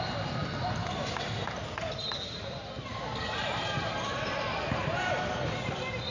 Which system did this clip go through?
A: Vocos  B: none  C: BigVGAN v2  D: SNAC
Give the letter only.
B